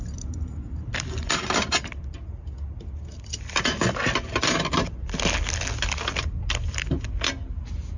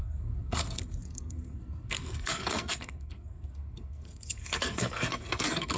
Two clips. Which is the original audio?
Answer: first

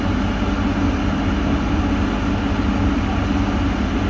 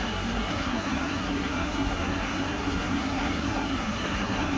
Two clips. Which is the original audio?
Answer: first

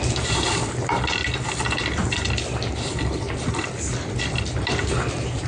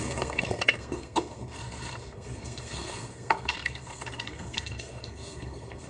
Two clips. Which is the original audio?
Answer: first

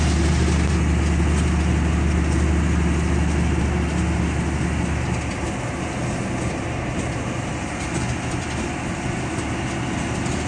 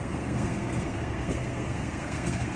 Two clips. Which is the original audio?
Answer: first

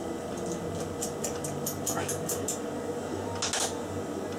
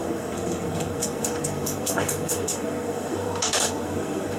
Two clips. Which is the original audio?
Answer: first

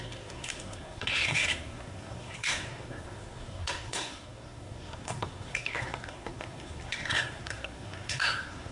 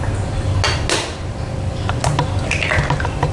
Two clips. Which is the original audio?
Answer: second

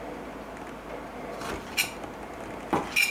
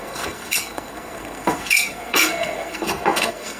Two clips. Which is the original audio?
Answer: first